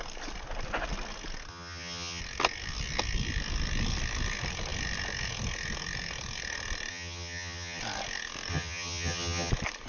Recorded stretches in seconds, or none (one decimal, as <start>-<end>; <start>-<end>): 0.0-1.5; 2.2-6.9; 7.8-8.5; 9.5-9.9